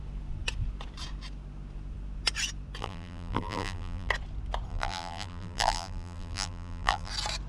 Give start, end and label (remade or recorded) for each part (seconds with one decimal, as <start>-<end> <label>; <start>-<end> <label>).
0.0-2.8 recorded; 2.8-4.1 remade; 4.1-4.7 recorded; 4.7-7.1 remade; 7.1-7.5 recorded